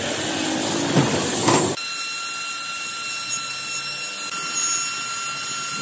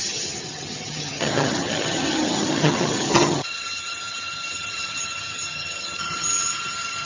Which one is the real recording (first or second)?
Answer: first